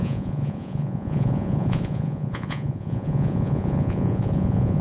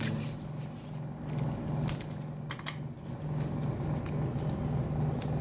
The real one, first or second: second